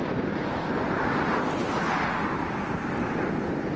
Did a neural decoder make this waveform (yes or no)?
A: no